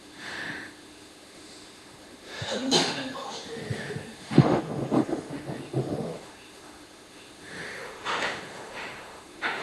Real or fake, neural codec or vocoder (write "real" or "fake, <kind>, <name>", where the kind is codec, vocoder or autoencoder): fake, autoencoder, DAC-VAE